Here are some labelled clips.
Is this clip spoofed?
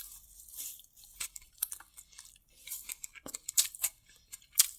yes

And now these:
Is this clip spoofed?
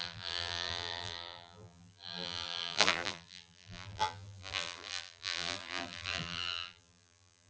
yes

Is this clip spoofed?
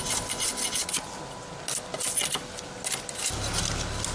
no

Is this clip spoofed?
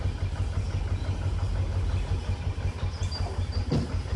no